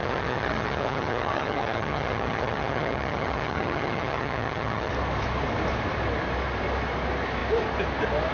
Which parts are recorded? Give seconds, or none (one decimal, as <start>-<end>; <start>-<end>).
4.9-8.3